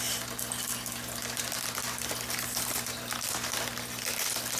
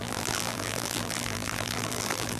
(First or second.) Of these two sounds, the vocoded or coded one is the second